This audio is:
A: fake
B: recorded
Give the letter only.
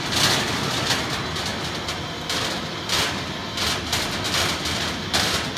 B